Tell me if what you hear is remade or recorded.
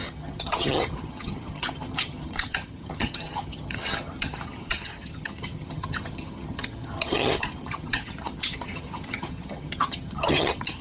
remade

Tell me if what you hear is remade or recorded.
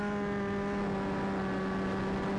recorded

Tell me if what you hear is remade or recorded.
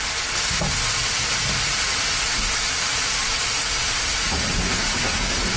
recorded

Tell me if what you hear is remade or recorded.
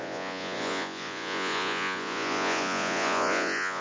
remade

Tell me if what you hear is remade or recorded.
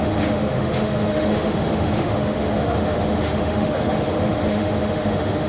remade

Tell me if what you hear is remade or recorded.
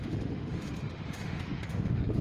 remade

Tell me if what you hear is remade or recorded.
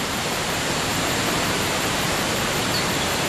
remade